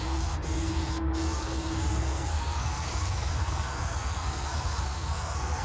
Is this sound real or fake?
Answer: fake